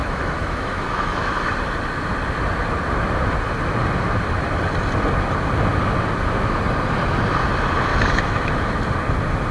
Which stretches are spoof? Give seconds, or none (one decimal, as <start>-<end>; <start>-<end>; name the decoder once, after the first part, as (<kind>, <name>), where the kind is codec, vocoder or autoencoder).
0.0-1.5 (autoencoder, DAC-VAE); 7.9-8.8